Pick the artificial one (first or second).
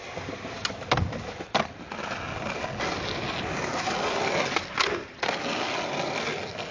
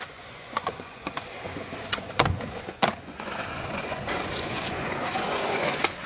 second